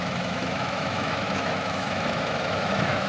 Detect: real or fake fake